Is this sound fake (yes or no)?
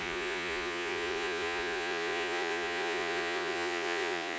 yes